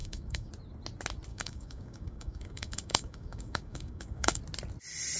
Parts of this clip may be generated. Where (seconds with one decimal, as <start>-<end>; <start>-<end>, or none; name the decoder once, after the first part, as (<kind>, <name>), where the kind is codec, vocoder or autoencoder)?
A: 0.0-0.5 (codec, DAC); 1.3-4.4

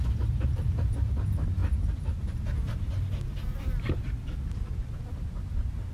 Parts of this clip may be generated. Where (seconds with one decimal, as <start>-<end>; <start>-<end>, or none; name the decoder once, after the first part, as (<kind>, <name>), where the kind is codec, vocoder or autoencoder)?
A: none